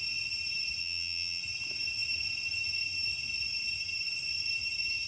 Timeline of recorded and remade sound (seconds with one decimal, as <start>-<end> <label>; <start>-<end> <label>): 0.0-0.8 recorded; 0.8-1.4 remade; 1.4-5.1 recorded